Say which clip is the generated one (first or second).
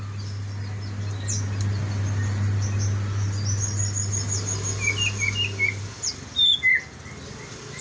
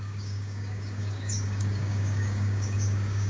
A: second